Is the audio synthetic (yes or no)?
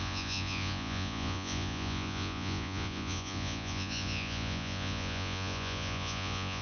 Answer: yes